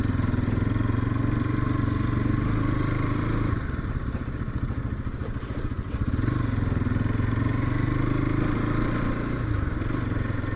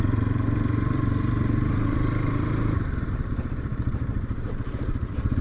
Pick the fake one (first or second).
second